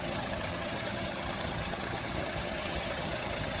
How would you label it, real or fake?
fake